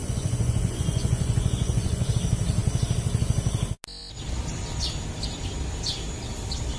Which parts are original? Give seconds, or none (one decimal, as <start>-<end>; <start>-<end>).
2.1-6.8